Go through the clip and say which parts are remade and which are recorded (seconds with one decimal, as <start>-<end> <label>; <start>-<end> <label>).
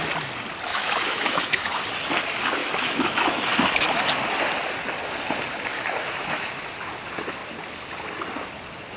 0.0-0.7 recorded; 0.7-1.8 remade; 1.8-2.6 recorded; 2.6-3.5 remade; 3.5-5.7 recorded; 5.7-6.6 remade; 6.6-9.0 recorded